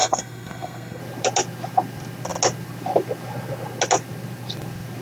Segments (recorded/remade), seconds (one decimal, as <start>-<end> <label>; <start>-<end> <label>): 0.0-1.0 remade; 1.0-5.0 recorded